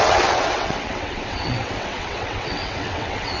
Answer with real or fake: fake